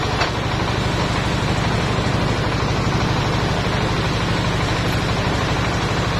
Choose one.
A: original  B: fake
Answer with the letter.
A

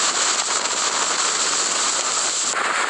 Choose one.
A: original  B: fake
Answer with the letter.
A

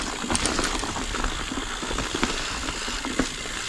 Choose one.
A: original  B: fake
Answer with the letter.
A